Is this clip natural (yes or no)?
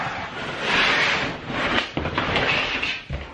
yes